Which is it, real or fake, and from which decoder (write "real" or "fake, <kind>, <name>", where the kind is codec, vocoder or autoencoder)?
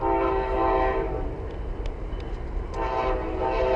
real